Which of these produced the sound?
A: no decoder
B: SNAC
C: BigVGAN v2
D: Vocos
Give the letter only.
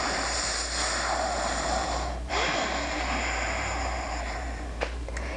C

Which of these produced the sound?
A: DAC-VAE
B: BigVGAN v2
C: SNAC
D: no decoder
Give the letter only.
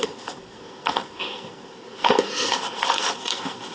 C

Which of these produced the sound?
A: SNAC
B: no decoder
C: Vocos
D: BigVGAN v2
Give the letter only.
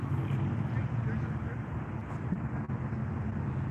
B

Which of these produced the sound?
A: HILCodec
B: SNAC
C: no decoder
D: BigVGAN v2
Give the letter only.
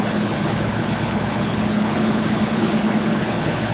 A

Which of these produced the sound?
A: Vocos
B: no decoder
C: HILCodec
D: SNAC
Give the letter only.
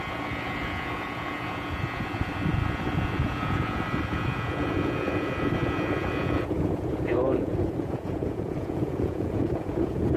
A